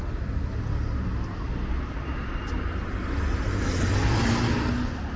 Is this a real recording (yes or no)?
yes